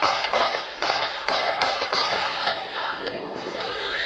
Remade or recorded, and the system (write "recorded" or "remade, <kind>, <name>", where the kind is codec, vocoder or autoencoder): remade, codec, SNAC